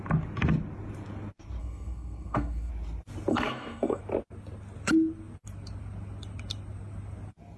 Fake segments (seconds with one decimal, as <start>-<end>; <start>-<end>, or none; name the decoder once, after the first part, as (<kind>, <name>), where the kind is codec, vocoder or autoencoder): 1.6-2.7 (codec, SNAC); 3.3-4.0